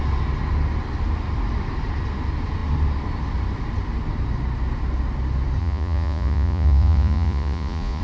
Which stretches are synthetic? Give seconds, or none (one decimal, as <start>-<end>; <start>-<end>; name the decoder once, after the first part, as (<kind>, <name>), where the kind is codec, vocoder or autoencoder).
5.6-8.0 (vocoder, Vocos)